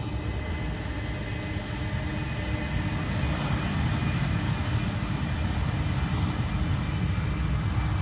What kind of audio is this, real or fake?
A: real